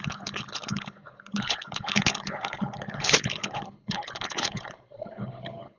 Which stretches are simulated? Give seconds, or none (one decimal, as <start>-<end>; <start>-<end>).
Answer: 0.0-5.8